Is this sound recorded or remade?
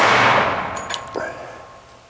recorded